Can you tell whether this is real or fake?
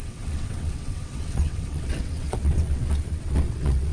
fake